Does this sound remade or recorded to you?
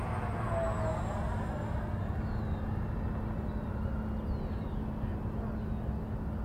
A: recorded